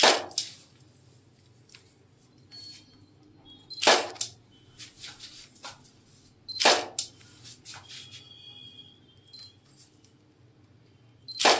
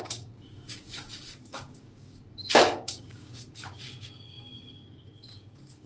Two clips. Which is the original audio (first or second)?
first